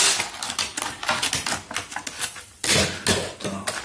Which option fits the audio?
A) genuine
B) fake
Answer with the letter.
A